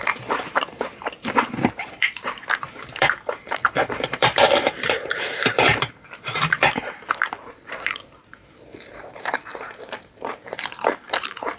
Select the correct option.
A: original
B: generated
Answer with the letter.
B